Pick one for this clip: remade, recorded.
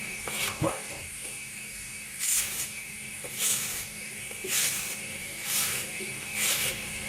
remade